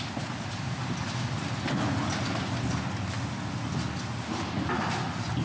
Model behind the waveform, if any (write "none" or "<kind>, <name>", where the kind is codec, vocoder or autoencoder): none